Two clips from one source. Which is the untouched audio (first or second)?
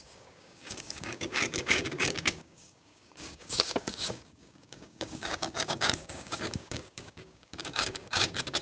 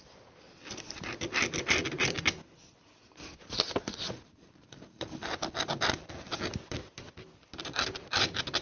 second